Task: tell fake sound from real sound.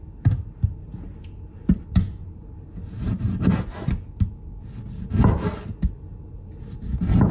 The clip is real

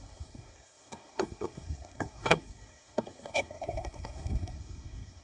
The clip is fake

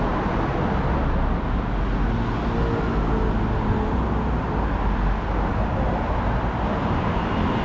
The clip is real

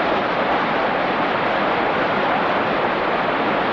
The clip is fake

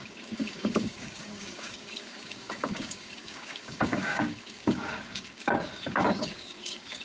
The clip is fake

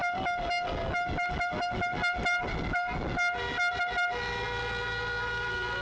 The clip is real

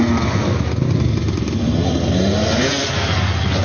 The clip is real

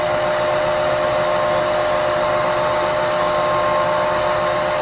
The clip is real